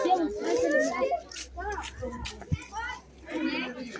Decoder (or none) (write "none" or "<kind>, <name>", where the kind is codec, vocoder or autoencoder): none